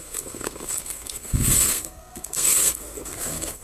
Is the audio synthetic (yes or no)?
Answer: yes